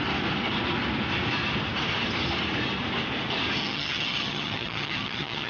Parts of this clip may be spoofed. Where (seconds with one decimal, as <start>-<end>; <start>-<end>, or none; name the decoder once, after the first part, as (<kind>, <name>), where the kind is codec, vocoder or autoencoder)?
3.6-5.5 (vocoder, HiFi-GAN)